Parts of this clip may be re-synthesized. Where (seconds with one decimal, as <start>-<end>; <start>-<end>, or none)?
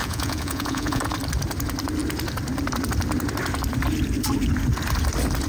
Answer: 0.0-1.0